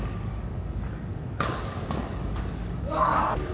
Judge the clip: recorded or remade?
remade